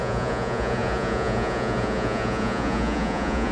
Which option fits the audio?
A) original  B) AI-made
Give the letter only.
B